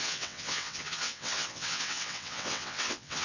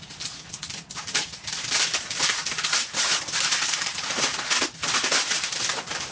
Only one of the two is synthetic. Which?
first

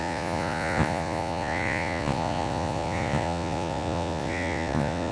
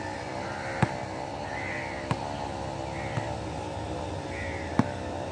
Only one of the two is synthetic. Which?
first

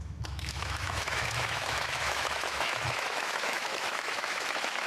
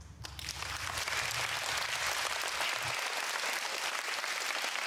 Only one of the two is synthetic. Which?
first